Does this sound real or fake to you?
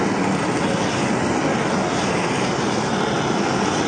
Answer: real